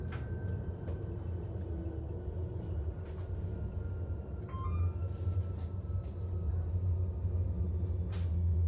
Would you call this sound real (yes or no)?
yes